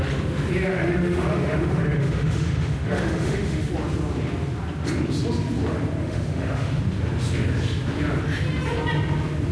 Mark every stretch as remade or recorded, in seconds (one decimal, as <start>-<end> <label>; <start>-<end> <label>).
0.0-0.7 recorded; 0.7-3.7 remade; 3.7-6.0 recorded; 6.0-6.8 remade; 6.8-9.5 recorded